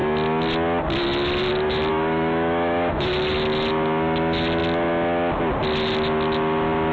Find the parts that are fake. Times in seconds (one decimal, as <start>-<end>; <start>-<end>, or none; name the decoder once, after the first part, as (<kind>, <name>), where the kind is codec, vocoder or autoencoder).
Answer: 1.9-3.1 (autoencoder, DAC-VAE)

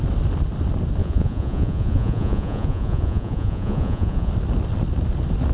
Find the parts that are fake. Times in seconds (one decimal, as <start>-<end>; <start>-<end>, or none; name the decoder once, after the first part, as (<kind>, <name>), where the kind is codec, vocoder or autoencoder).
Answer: 1.0-4.3 (vocoder, Vocos)